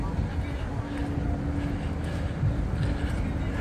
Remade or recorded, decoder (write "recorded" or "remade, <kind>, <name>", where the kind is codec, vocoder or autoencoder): recorded